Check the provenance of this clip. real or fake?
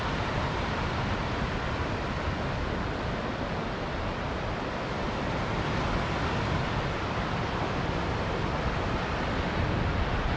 real